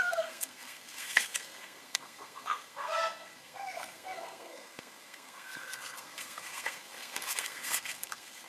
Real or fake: fake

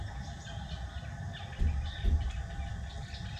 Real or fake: real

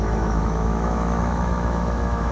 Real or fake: fake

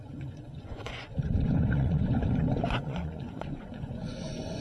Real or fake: fake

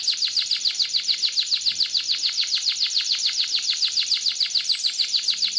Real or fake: real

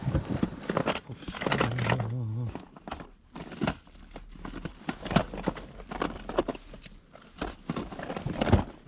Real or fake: real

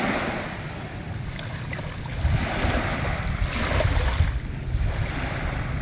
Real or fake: real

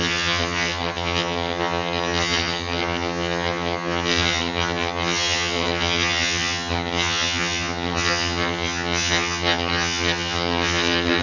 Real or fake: fake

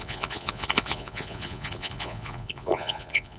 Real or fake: fake